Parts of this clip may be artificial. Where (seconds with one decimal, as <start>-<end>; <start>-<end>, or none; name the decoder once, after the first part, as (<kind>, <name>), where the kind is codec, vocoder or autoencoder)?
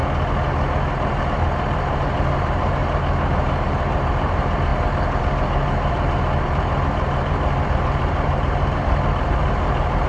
1.2-2.8 (vocoder, BigVGAN v2); 3.4-4.7; 5.2-10.1